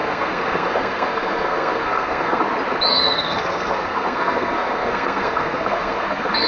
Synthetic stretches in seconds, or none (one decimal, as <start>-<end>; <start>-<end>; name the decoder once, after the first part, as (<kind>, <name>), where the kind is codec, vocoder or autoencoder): 0.0-2.4 (codec, SNAC); 2.9-6.5